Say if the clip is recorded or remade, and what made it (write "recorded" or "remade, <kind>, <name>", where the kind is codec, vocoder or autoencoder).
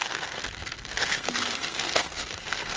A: remade, codec, SNAC